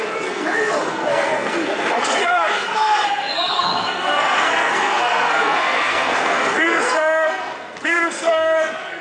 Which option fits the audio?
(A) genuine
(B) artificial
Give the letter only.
B